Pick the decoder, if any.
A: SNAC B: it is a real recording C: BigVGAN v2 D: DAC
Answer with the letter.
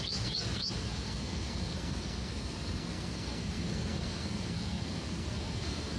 A